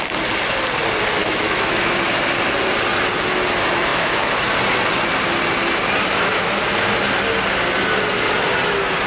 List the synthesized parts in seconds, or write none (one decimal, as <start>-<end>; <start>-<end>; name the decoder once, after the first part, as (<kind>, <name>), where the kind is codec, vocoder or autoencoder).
1.2-1.9 (autoencoder, DAC-VAE); 3.9-4.4